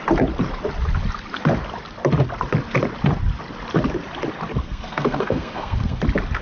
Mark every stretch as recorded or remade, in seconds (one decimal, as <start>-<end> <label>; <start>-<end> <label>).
0.0-4.6 recorded; 4.6-6.0 remade; 6.0-6.4 recorded

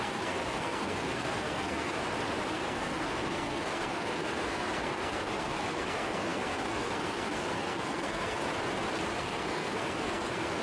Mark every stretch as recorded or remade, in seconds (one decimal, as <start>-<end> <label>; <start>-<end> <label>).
0.0-2.0 remade; 2.0-2.5 recorded; 2.5-8.4 remade; 8.4-9.1 recorded; 9.1-10.6 remade

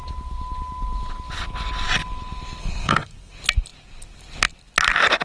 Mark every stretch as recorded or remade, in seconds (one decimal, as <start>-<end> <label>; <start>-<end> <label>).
0.0-2.6 recorded; 2.6-3.3 remade; 3.3-5.2 recorded

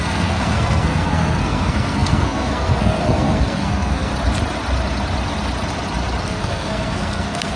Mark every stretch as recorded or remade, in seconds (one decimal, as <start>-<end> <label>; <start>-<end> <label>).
0.0-4.1 remade; 4.1-6.2 recorded; 6.2-7.6 remade

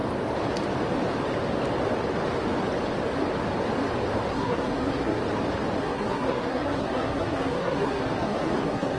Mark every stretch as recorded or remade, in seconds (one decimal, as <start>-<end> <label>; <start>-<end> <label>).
0.0-4.3 recorded; 4.3-5.2 remade; 5.2-5.8 recorded; 5.8-9.0 remade

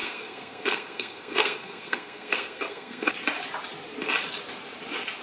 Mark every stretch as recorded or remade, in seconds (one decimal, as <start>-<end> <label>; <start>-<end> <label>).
0.0-3.1 remade; 3.1-5.2 recorded